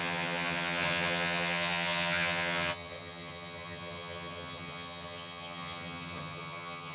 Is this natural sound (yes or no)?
no